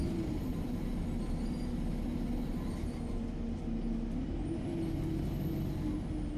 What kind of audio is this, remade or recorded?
recorded